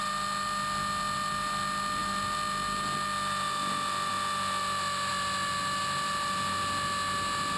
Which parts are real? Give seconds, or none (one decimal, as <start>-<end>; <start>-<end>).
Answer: 0.0-7.6